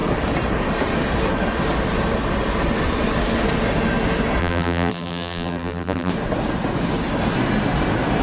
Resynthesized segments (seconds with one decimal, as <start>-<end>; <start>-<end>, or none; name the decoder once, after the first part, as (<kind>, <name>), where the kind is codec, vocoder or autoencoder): 4.4-6.1 (vocoder, BigVGAN v2)